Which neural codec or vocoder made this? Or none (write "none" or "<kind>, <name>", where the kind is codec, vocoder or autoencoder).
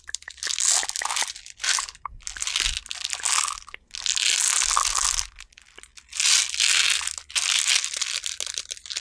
none